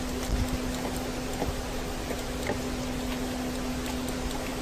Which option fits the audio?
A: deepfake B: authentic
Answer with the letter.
B